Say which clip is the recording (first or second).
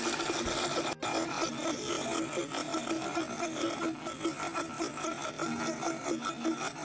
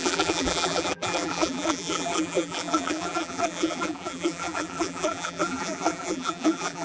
first